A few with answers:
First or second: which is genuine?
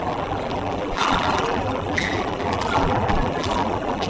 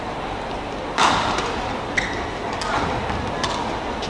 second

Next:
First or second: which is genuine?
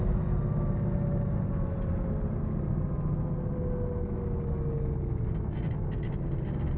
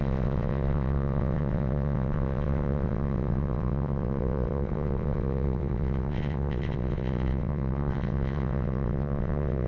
first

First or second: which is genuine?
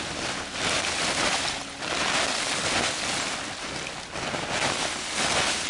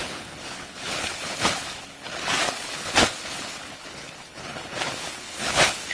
first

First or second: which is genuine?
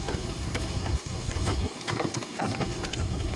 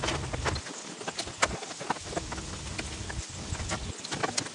second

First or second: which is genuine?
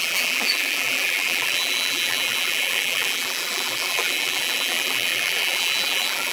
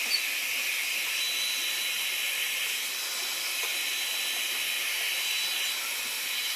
second